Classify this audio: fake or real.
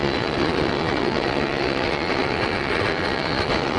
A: fake